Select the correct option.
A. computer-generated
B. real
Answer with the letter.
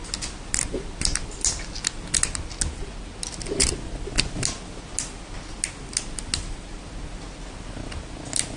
B